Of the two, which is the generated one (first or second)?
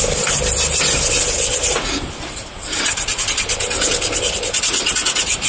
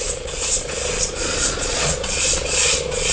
second